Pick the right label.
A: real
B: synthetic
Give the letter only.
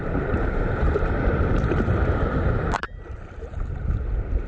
B